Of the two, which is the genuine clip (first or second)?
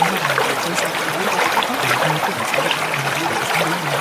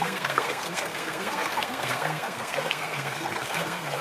first